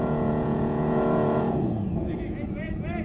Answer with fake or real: fake